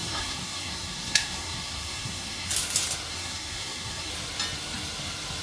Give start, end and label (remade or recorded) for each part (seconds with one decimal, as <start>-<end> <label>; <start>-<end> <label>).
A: 0.0-2.5 remade; 2.5-3.1 recorded; 3.1-4.1 remade; 4.1-5.4 recorded